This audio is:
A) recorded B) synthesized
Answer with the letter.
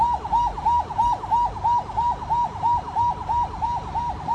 A